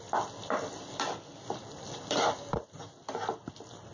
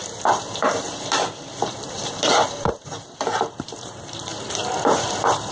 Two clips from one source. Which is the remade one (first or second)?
second